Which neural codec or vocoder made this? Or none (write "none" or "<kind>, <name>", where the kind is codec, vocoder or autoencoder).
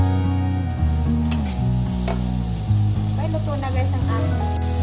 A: none